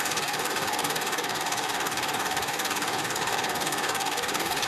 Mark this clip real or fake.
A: fake